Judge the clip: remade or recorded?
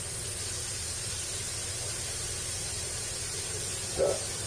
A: recorded